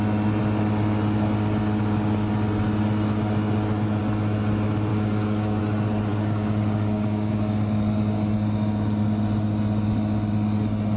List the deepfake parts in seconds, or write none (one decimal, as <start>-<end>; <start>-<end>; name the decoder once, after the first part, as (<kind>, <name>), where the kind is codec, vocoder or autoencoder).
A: 4.9-5.6 (codec, DAC); 6.1-7.3